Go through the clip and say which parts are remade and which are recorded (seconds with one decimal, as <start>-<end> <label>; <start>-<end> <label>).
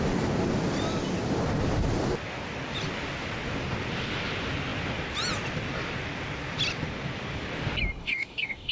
0.0-8.0 recorded; 8.0-8.7 remade